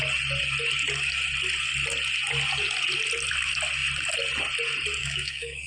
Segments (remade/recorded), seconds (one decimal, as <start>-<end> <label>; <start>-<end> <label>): 0.0-5.0 recorded; 5.0-5.7 remade